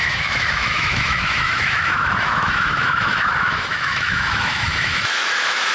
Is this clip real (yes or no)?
no